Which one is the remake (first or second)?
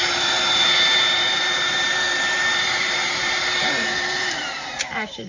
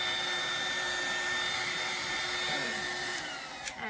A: first